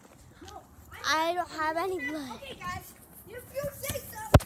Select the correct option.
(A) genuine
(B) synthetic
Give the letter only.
A